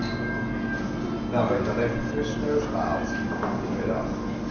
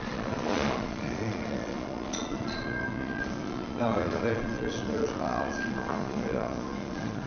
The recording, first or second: first